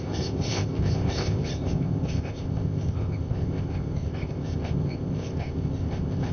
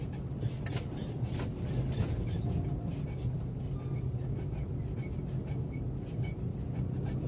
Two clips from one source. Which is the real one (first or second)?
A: second